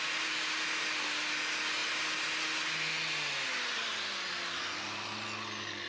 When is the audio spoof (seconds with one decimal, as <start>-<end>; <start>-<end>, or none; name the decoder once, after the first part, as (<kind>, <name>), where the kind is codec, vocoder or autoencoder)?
none